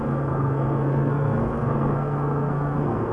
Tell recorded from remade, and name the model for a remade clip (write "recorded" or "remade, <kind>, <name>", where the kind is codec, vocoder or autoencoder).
remade, codec, SNAC